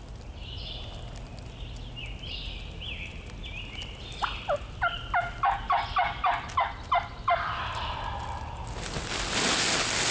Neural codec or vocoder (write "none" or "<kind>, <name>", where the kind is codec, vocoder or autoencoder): none